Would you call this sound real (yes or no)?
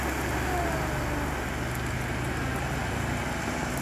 yes